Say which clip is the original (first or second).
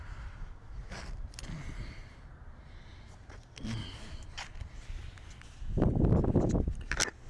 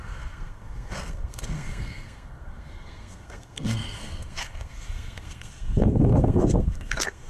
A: first